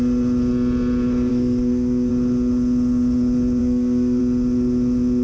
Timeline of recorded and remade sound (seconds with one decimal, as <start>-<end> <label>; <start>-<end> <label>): 0.0-1.3 recorded; 1.3-2.1 remade; 2.1-3.6 recorded; 3.6-4.2 remade; 4.2-5.2 recorded